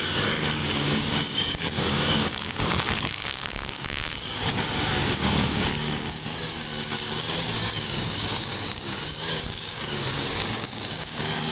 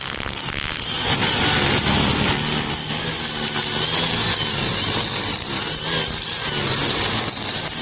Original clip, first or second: second